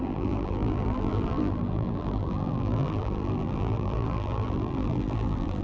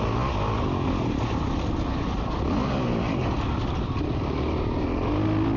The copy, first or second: first